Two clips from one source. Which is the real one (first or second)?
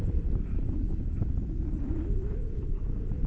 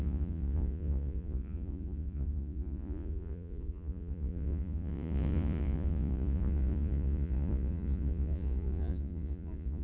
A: first